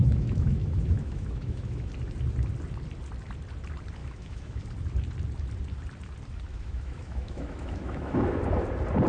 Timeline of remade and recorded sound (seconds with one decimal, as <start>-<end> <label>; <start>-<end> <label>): 0.0-1.9 remade; 1.9-4.0 recorded; 4.0-4.6 remade; 4.6-6.5 recorded; 6.5-8.4 remade; 8.4-9.1 recorded